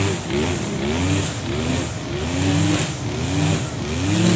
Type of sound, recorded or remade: recorded